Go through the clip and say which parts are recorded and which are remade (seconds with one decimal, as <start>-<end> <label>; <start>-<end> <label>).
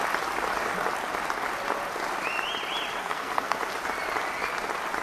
0.0-3.0 recorded; 3.0-3.6 remade; 3.6-5.0 recorded